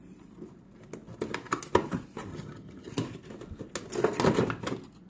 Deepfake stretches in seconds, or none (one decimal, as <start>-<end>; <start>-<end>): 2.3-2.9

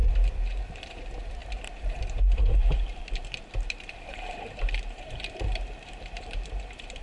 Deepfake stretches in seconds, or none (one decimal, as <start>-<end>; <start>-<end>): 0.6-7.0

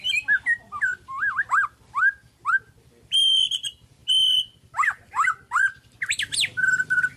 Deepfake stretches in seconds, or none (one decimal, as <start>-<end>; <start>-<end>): none

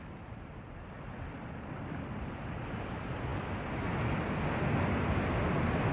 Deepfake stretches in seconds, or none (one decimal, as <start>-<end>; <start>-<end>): none